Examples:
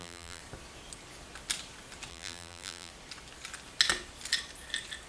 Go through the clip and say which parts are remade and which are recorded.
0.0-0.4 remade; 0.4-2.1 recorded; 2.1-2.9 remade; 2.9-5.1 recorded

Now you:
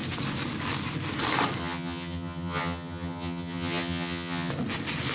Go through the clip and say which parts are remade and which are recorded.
0.0-1.6 recorded; 1.6-4.5 remade; 4.5-5.1 recorded

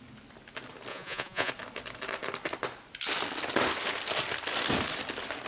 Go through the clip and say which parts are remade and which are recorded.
0.0-0.9 recorded; 0.9-1.5 remade; 1.5-5.5 recorded

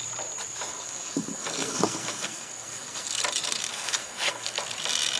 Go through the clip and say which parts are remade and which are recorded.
0.0-0.7 recorded; 0.7-3.2 remade; 3.2-3.7 recorded; 3.7-4.6 remade; 4.6-5.2 recorded

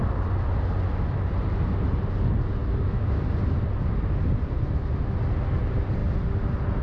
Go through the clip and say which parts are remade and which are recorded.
0.0-2.6 recorded; 2.6-3.2 remade; 3.2-6.8 recorded

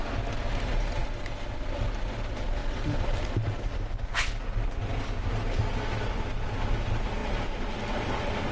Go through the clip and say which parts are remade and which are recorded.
0.0-8.5 recorded